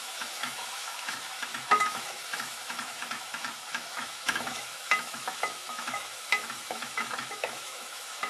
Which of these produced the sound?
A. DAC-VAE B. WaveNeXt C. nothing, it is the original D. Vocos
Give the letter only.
A